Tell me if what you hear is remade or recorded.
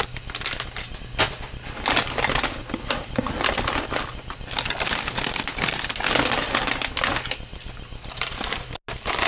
recorded